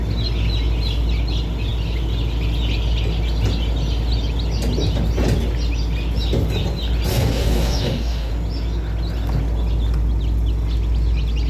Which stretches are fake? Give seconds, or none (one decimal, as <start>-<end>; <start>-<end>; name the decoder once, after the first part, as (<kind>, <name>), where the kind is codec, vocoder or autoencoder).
7.1-8.3 (codec, DAC)